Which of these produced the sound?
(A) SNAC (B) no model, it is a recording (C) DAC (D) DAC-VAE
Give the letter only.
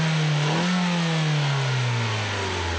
B